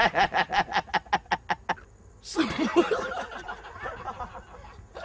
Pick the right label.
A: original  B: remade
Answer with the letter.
A